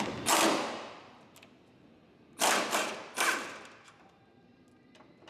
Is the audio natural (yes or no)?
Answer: yes